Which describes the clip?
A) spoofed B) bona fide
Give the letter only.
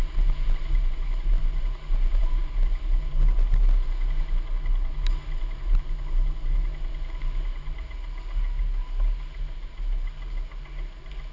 B